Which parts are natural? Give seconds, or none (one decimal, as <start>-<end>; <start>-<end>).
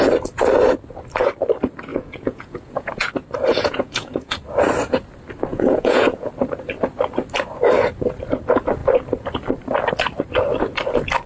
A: 0.0-1.9; 3.1-3.5; 4.4-5.5; 6.3-11.3